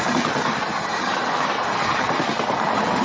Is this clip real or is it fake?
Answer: real